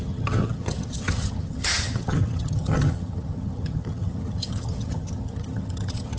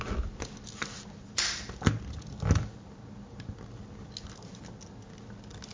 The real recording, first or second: second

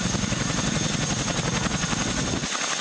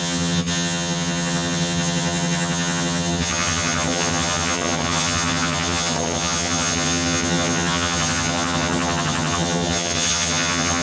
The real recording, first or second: first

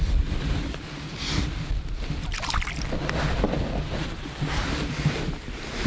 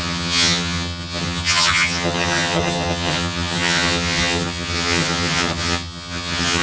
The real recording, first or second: first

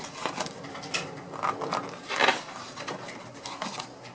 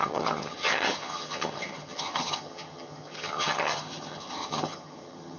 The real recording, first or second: first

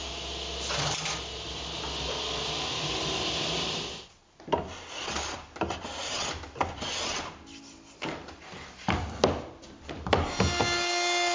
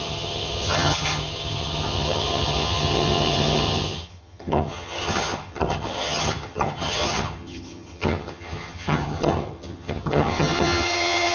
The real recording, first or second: first